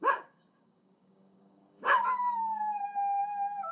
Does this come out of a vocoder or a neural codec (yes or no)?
yes